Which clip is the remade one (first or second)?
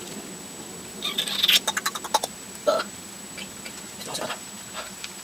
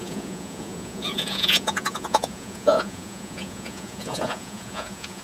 second